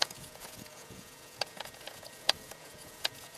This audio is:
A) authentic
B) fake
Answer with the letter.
B